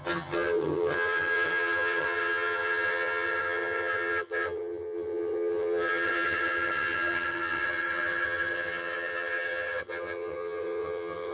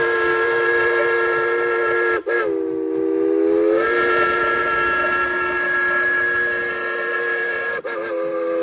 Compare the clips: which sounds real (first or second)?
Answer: second